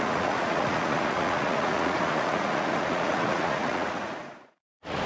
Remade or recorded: remade